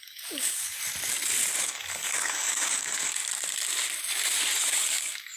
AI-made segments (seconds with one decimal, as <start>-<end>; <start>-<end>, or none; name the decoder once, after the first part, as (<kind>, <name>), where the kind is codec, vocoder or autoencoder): 0.0-0.8 (codec, DAC); 1.6-3.2; 4.6-5.4